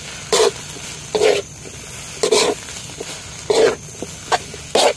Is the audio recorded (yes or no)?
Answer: yes